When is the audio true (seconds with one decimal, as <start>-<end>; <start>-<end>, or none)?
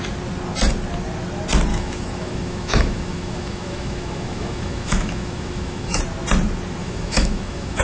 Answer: 0.0-1.7; 6.0-6.8